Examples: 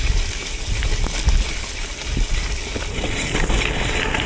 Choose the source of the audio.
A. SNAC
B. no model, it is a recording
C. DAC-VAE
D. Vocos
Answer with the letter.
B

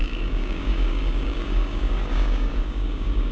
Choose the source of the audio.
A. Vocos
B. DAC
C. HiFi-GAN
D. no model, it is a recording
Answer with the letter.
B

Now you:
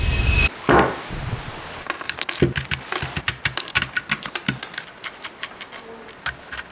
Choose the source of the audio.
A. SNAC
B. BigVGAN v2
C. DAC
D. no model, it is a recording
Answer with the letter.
D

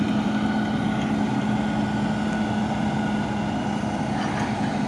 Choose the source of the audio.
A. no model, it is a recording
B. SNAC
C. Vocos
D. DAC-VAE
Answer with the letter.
A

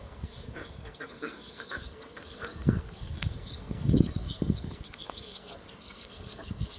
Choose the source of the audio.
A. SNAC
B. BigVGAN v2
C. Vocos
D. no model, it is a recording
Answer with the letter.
A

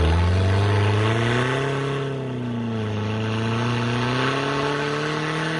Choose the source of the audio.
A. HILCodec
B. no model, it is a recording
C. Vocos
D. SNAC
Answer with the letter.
B